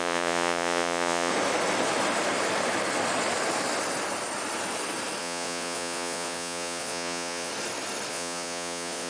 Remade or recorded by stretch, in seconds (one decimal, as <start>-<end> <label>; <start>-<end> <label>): 0.0-1.3 remade; 1.3-5.2 recorded; 5.2-7.5 remade; 7.5-8.1 recorded; 8.1-9.1 remade